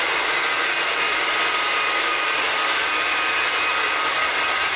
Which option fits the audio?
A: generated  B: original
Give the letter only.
A